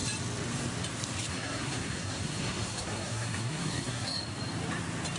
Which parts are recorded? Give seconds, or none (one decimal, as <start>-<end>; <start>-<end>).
0.0-1.3; 4.2-5.2